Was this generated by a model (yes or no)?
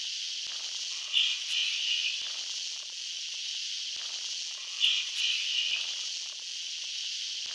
no